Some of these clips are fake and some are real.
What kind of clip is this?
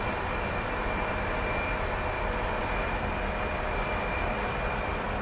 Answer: fake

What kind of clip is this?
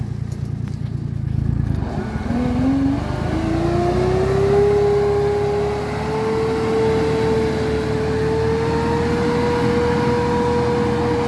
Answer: real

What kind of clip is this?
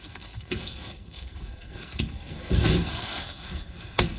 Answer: fake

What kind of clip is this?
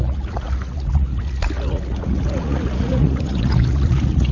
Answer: fake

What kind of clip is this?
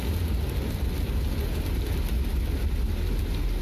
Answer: real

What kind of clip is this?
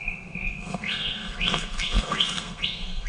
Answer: fake